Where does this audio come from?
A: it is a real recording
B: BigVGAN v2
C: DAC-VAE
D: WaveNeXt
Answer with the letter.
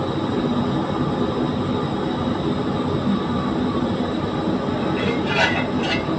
A